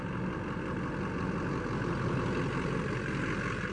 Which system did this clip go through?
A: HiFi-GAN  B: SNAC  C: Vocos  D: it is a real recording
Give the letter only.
D